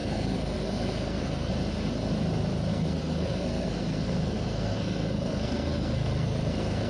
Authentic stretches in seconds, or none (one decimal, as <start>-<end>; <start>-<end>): 1.5-2.7

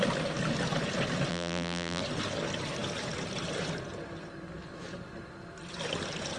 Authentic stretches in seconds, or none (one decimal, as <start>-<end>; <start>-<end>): 0.0-1.3; 2.0-6.4

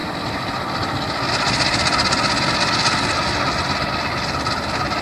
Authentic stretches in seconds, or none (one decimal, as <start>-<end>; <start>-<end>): 0.0-5.0

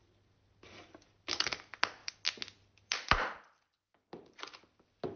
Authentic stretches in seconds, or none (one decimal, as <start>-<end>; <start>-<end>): 0.0-5.2

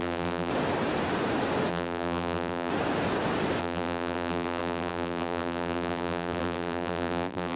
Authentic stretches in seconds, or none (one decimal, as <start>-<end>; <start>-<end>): 0.5-1.7; 2.7-3.6